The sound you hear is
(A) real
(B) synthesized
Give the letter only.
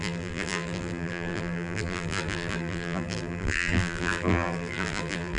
B